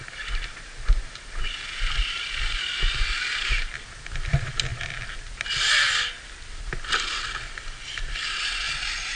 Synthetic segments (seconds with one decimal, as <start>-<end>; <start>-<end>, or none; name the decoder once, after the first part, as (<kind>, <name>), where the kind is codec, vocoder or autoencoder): none